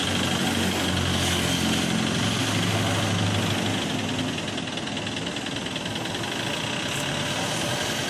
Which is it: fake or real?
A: real